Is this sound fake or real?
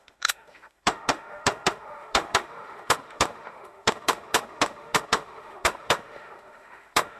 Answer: fake